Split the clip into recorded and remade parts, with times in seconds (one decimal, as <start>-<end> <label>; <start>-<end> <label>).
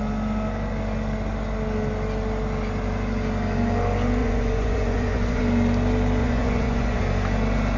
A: 0.0-4.2 recorded; 4.2-5.4 remade; 5.4-6.2 recorded; 6.2-7.0 remade; 7.0-7.8 recorded